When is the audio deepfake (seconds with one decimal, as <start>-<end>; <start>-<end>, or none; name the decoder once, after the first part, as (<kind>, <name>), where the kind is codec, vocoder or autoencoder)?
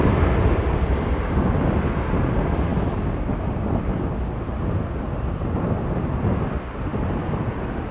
none